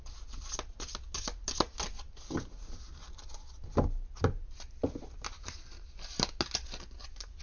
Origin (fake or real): real